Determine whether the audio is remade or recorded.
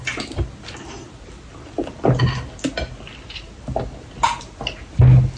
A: recorded